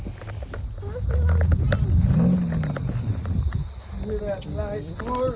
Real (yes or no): yes